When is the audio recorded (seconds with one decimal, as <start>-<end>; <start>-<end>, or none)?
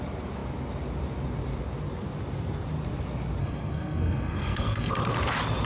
0.0-3.4; 4.9-5.6